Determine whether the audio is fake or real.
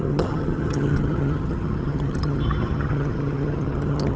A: fake